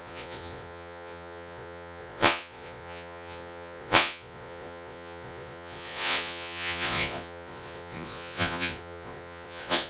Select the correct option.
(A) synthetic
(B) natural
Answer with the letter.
A